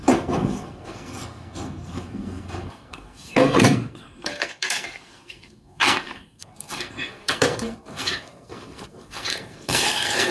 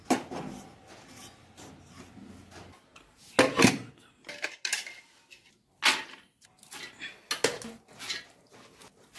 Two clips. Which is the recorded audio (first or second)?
second